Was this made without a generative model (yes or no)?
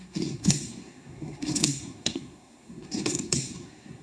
no